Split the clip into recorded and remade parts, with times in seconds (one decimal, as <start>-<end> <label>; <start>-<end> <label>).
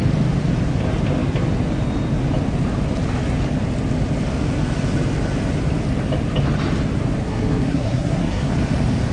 0.0-7.2 recorded; 7.2-8.5 remade; 8.5-9.1 recorded